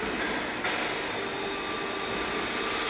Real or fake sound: real